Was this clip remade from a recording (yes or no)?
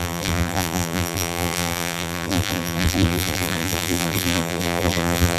yes